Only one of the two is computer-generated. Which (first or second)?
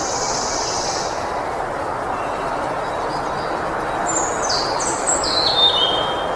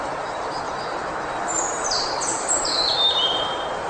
second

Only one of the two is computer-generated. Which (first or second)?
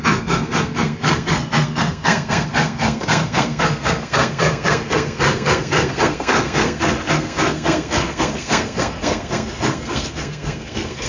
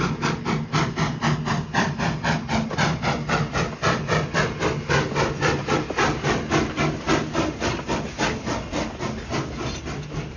first